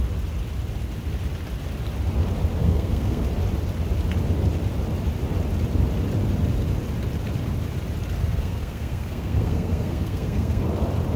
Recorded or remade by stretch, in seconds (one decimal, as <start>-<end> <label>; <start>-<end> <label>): 0.0-2.6 recorded; 2.6-3.2 remade; 3.2-8.2 recorded; 8.2-10.6 remade; 10.6-11.2 recorded